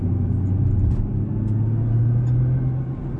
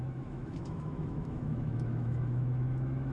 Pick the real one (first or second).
first